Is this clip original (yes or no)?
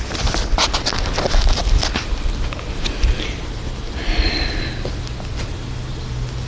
yes